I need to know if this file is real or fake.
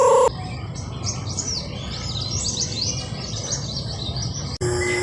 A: real